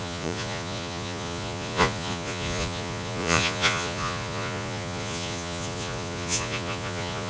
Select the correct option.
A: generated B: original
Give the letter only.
A